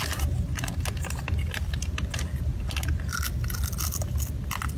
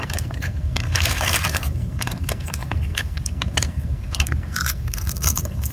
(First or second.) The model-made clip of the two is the second